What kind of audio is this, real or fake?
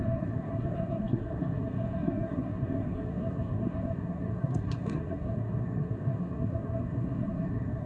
fake